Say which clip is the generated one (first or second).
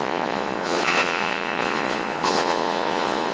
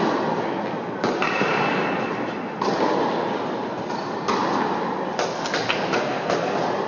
first